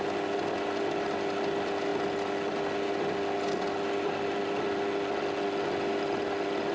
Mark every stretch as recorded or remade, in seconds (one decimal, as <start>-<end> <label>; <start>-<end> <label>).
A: 0.0-6.7 recorded